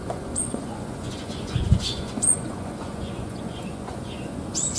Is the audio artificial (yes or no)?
yes